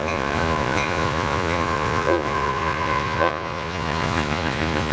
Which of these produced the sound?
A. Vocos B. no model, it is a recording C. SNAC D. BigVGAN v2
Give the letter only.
A